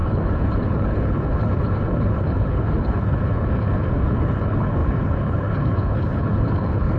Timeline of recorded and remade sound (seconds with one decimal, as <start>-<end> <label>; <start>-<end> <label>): 0.0-7.0 remade